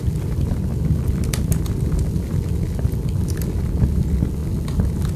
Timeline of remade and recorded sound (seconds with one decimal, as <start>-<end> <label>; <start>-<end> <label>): 0.0-5.2 recorded